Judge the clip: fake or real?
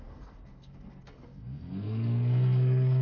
fake